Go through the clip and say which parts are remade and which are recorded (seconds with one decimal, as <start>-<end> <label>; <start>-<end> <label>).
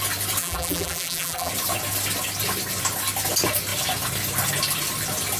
0.0-0.4 recorded; 0.4-1.5 remade; 1.5-5.4 recorded